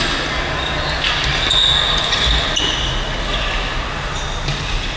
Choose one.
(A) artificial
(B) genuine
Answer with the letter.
B